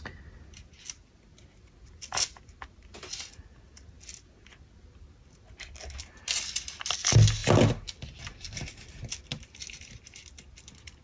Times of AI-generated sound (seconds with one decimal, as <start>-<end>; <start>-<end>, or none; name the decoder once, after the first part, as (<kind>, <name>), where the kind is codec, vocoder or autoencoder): none